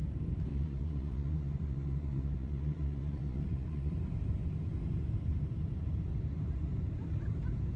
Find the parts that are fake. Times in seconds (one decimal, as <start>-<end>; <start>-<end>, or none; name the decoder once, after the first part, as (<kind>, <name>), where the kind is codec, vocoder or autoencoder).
0.5-3.9 (vocoder, Vocos)